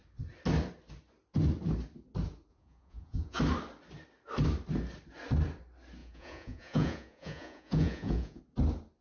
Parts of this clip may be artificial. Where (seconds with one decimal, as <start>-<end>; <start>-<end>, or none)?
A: 2.5-3.4; 6.0-8.4